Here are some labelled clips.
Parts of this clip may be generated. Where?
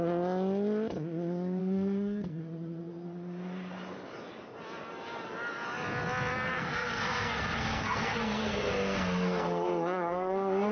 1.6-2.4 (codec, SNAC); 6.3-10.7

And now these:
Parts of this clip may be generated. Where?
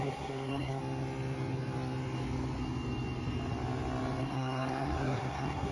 0.0-0.8 (codec, SNAC); 4.2-5.7